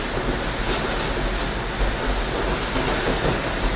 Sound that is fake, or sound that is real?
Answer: real